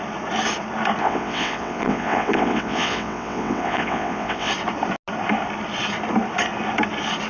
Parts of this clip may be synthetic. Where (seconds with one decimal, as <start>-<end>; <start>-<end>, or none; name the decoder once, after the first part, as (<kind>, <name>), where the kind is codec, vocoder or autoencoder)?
1.0-4.5 (vocoder, WaveNeXt)